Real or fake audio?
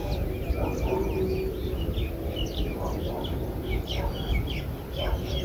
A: real